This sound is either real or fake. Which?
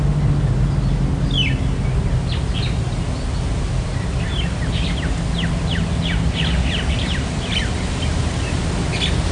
real